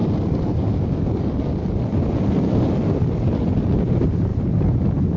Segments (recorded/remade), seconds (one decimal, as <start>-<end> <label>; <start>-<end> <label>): 0.0-5.2 recorded